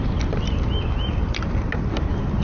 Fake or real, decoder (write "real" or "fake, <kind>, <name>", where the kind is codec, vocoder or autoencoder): real